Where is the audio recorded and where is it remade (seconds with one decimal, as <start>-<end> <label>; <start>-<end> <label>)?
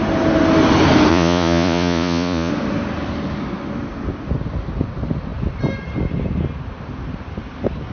0.0-1.1 recorded; 1.1-2.5 remade; 2.5-7.9 recorded